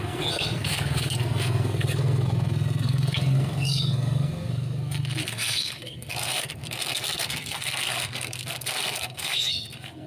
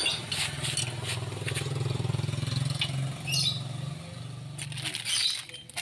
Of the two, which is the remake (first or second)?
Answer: first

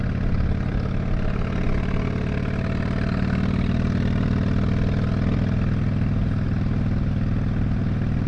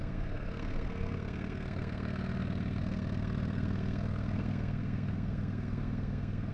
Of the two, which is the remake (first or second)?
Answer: second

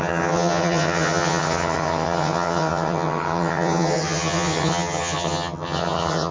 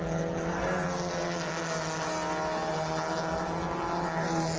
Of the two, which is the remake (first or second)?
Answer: first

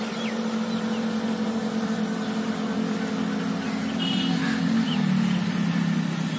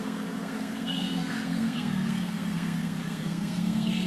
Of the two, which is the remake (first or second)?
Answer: second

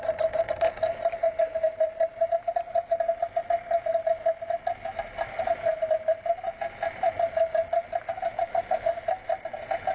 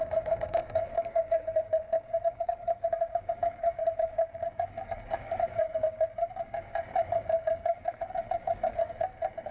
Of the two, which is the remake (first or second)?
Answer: second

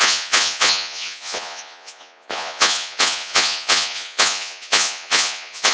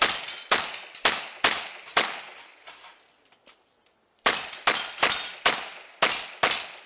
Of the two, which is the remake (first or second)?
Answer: first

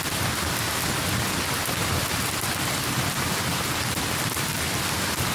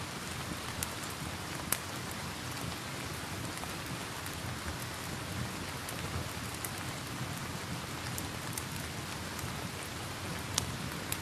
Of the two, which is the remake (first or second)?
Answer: first